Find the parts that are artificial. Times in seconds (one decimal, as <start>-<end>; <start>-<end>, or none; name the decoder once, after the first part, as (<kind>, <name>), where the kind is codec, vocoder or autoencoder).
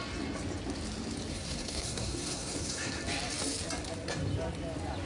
1.3-3.0 (codec, SNAC)